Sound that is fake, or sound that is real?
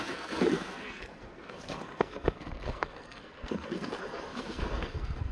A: fake